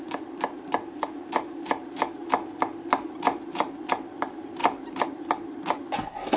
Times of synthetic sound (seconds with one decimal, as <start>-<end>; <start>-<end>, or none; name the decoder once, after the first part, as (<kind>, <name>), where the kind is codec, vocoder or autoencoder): none